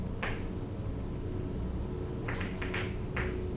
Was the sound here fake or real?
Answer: real